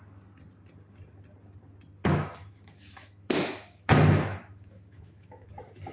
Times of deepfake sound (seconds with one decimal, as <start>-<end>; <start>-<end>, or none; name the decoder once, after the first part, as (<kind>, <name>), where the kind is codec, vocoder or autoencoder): 2.0-5.5 (autoencoder, DAC-VAE)